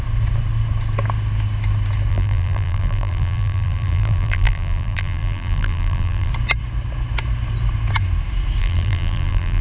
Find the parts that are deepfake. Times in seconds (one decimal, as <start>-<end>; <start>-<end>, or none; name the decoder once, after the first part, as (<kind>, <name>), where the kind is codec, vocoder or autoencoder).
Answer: 2.1-6.3 (vocoder, BigVGAN v2); 8.6-9.6